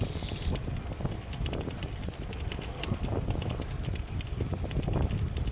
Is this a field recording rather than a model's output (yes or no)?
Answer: yes